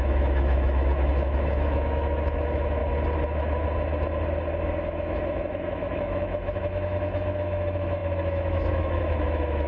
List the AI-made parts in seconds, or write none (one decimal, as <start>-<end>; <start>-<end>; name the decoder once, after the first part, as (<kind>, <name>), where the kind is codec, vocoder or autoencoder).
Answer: 0.0-2.8 (autoencoder, DAC-VAE); 4.5-9.7